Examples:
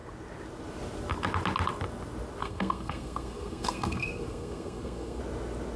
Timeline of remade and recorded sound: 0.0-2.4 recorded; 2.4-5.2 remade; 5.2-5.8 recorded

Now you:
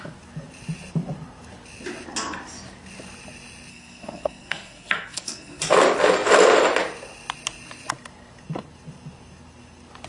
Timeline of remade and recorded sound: 0.0-3.7 recorded; 3.7-5.6 remade; 5.6-10.1 recorded

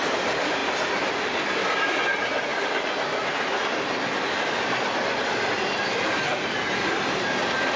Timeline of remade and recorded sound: 0.0-7.8 recorded

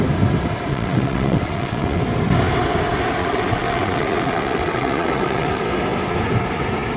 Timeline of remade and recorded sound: 0.0-0.7 recorded; 0.7-2.0 remade; 2.0-3.2 recorded; 3.2-5.6 remade; 5.6-7.0 recorded

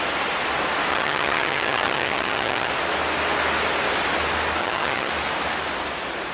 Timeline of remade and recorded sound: 0.0-0.9 recorded; 0.9-2.7 remade; 2.7-4.6 recorded; 4.6-5.1 remade; 5.1-6.3 recorded

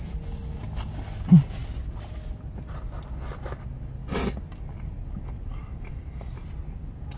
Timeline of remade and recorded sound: 0.0-7.2 recorded

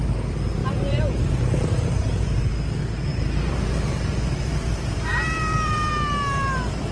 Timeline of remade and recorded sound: 0.0-0.6 recorded; 0.6-2.5 remade; 2.5-3.1 recorded; 3.1-5.9 remade; 5.9-6.9 recorded